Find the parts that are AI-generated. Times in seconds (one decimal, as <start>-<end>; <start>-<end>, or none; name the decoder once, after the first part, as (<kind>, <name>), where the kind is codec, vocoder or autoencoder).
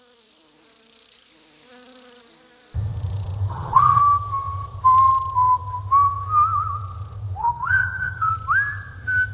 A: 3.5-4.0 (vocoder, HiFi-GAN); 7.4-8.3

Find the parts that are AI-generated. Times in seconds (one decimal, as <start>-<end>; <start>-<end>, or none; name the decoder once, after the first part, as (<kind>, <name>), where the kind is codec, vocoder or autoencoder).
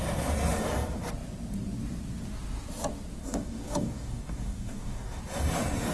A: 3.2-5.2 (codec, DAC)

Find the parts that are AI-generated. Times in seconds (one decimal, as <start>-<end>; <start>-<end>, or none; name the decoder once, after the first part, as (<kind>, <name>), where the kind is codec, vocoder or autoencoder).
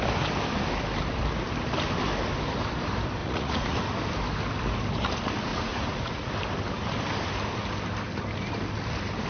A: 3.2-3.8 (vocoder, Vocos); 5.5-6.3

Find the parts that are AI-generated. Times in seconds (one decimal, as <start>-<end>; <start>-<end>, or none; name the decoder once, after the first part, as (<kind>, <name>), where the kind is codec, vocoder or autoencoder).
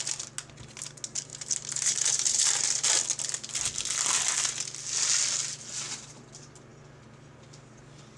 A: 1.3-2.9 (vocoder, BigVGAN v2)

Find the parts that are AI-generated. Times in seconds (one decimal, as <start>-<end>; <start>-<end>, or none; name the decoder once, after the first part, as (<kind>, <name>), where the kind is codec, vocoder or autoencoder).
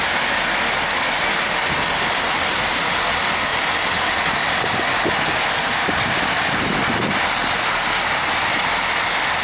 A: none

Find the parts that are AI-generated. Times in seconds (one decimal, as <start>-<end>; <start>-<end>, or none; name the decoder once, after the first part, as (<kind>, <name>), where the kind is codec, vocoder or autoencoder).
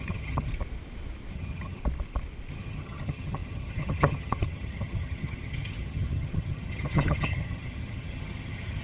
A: 0.0-0.5 (vocoder, HiFi-GAN); 1.3-1.8; 2.5-8.8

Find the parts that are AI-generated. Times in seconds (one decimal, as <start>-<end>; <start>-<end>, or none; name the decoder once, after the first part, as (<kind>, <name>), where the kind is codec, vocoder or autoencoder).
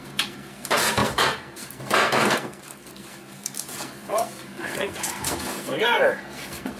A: 0.0-6.8 (codec, SNAC)